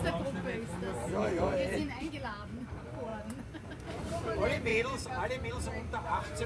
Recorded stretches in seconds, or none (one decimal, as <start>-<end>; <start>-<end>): 3.1-4.0; 4.7-5.5